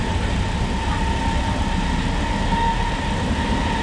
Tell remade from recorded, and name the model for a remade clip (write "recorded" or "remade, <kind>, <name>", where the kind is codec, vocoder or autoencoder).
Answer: recorded